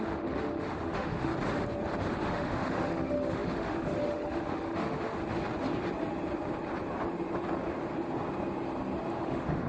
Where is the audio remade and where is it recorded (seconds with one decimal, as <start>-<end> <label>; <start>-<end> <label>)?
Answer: 0.0-1.3 remade; 1.3-2.2 recorded; 2.2-5.2 remade; 5.2-9.2 recorded; 9.2-9.7 remade